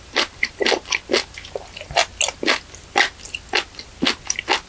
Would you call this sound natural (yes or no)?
yes